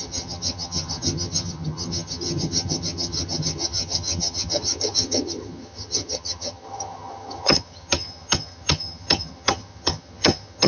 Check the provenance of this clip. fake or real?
fake